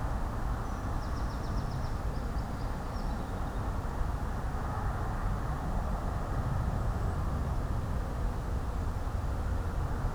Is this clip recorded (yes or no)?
yes